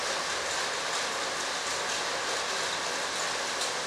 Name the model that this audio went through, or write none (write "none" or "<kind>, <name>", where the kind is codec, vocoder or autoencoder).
none